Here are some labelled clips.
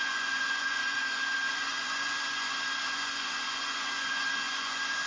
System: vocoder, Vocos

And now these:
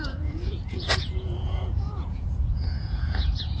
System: vocoder, Vocos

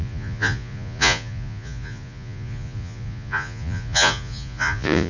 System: vocoder, Vocos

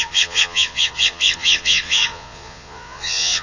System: vocoder, Vocos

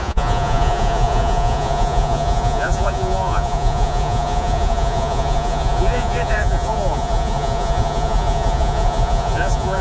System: vocoder, Vocos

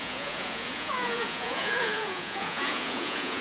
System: vocoder, Vocos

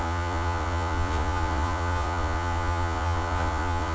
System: vocoder, Vocos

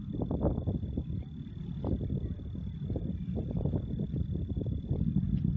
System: none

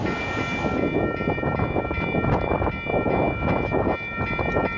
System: none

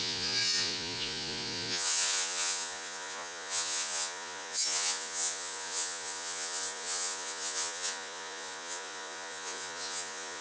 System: vocoder, Vocos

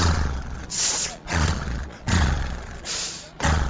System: vocoder, Vocos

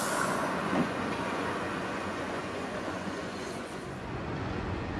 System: vocoder, Vocos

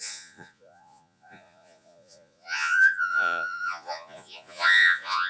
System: vocoder, Vocos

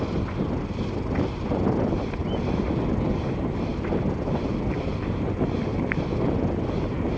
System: none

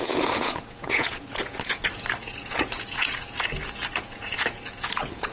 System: vocoder, Vocos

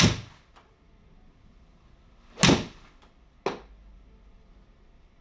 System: none